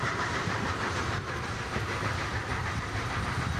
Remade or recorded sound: remade